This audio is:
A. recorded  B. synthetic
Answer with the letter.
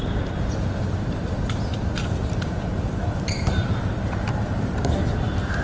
B